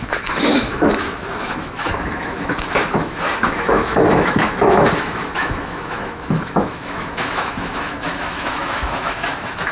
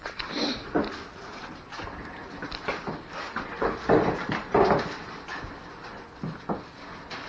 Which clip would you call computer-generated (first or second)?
first